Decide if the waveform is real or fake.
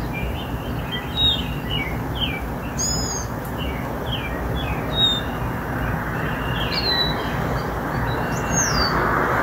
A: real